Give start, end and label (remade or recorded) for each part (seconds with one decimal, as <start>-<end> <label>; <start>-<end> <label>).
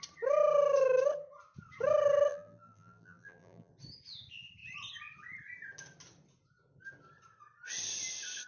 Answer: 0.0-2.3 recorded; 2.3-3.7 remade; 3.7-8.5 recorded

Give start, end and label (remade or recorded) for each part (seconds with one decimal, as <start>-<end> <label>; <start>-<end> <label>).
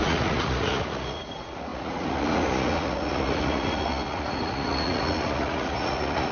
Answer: 0.0-6.3 remade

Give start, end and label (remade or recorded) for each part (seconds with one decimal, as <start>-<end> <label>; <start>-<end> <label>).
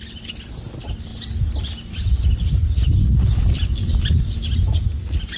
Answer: 0.0-5.4 recorded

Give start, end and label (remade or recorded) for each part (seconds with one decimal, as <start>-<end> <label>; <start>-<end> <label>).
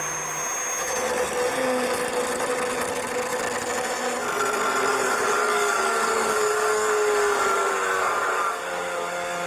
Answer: 0.0-4.9 recorded; 4.9-9.5 remade